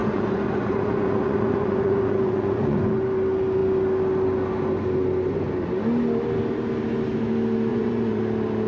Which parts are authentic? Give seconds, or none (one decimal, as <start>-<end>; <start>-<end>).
2.9-7.7; 8.2-8.7